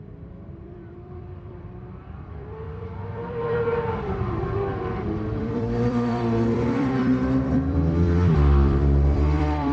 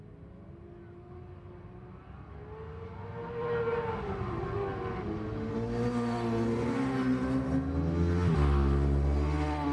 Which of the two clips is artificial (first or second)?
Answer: first